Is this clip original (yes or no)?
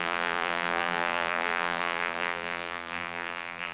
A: no